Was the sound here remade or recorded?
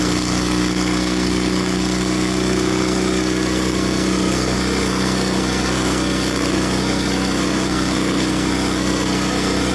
remade